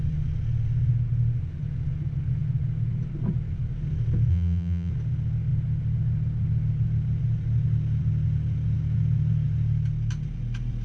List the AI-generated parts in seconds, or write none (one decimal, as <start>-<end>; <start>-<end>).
4.3-4.9